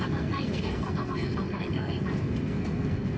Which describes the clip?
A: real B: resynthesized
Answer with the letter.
B